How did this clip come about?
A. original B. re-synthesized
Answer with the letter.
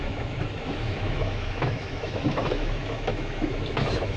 B